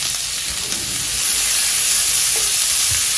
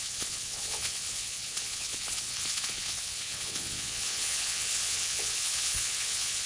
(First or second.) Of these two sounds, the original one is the first